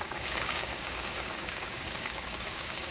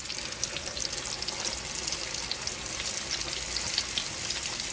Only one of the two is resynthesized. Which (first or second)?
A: first